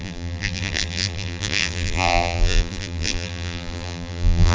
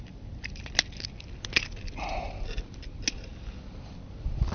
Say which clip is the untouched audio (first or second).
second